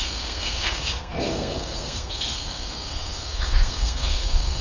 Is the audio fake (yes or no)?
yes